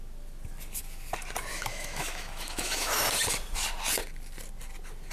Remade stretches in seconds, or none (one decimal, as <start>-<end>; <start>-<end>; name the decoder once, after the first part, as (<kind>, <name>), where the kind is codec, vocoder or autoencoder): 1.5-3.0 (autoencoder, DAC-VAE)